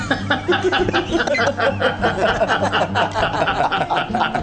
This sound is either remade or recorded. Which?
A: recorded